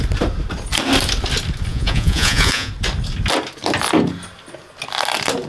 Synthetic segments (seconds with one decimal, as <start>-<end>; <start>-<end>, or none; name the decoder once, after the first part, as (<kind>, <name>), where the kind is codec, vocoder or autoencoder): 1.7-2.7 (vocoder, Vocos)